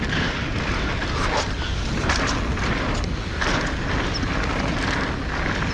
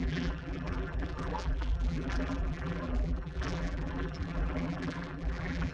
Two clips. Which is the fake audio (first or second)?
second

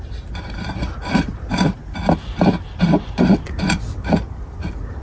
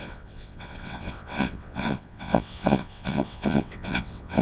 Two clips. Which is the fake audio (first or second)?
second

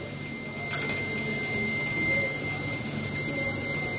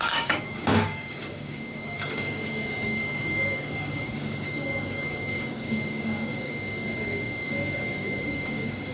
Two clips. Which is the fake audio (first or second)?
second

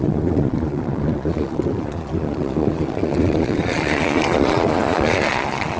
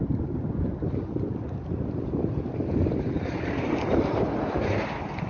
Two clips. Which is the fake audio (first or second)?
first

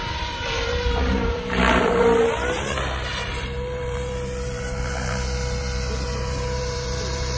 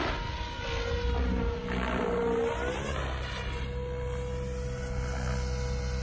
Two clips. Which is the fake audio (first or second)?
first